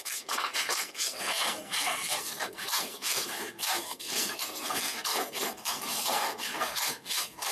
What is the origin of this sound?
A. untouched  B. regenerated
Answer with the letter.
B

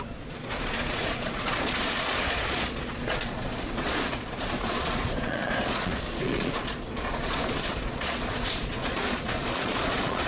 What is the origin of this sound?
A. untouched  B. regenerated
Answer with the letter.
B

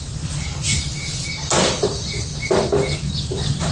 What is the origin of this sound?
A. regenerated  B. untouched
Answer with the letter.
B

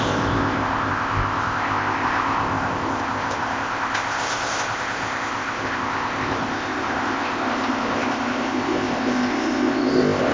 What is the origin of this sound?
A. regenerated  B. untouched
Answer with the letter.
A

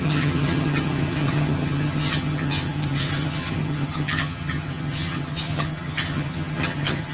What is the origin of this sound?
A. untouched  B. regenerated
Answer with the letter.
B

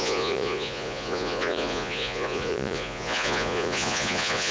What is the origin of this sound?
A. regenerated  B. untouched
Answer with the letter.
A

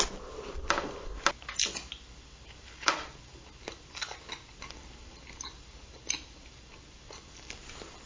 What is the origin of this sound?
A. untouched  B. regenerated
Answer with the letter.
A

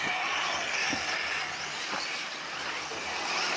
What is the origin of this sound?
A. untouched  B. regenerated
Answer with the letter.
A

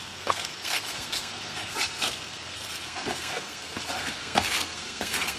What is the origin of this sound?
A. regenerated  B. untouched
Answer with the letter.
A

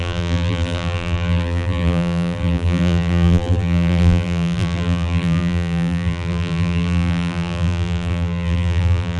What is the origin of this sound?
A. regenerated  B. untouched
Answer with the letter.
A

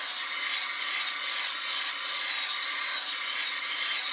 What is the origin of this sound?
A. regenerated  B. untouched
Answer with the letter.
B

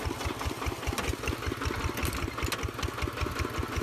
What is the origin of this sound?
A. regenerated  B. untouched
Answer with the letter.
B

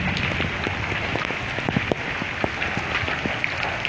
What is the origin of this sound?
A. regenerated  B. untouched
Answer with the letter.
B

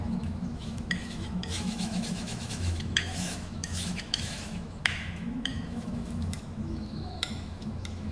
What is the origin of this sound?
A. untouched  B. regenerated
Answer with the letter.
B